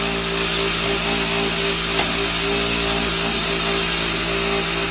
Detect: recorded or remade recorded